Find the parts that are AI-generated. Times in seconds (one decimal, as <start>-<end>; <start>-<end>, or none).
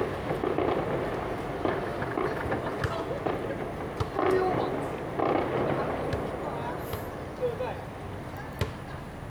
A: none